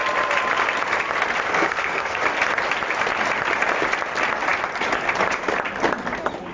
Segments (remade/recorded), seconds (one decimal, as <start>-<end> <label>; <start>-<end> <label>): 0.0-1.5 recorded; 1.5-2.2 remade; 2.2-6.5 recorded